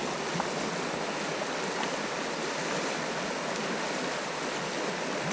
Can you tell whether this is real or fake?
real